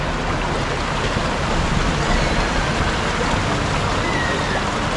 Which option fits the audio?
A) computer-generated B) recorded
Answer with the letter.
B